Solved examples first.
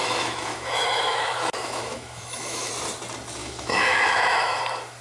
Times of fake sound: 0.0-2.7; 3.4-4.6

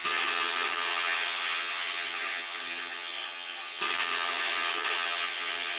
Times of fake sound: 0.0-5.8